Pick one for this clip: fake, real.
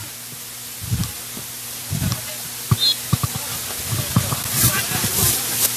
real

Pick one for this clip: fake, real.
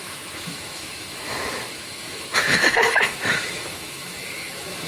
fake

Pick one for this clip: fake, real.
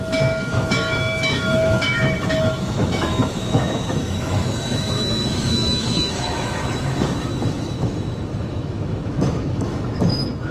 fake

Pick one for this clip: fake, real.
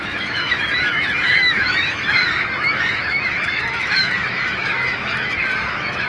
fake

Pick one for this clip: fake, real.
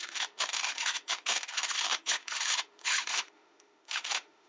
fake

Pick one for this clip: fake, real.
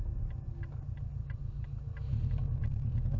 real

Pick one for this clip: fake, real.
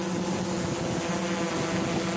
real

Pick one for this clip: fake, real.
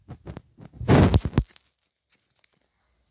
real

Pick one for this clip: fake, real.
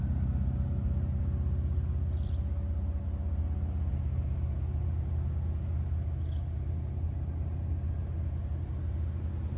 real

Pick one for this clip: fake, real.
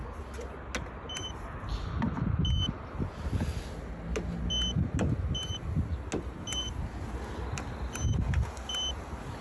real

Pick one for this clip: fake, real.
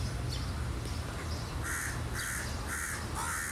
real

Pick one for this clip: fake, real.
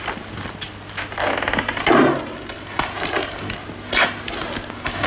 real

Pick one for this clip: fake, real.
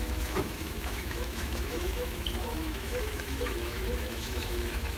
fake